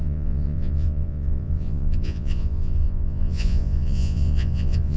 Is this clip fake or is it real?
fake